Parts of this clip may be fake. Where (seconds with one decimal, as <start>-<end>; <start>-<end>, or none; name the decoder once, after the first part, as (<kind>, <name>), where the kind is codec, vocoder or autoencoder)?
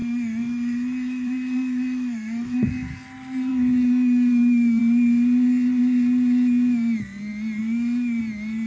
0.0-2.7 (autoencoder, DAC-VAE); 3.5-4.8; 7.6-8.2